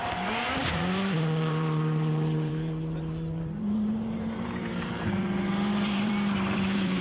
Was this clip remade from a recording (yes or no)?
yes